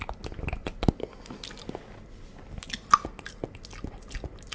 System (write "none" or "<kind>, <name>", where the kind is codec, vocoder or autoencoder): none